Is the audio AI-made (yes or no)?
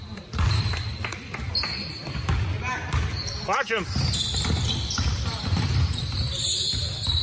no